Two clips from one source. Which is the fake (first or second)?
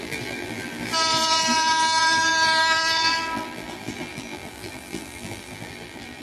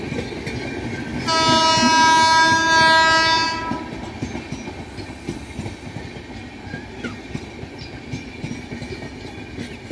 first